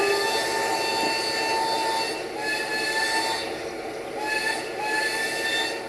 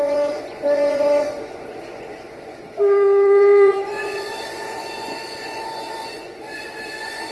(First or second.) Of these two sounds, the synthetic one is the second